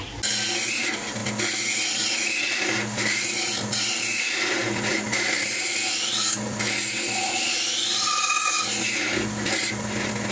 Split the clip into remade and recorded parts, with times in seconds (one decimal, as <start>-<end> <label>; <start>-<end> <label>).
0.0-10.3 recorded